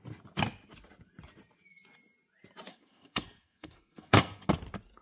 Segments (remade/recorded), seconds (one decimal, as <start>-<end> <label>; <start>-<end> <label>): 0.0-2.7 recorded; 2.7-4.5 remade; 4.5-5.0 recorded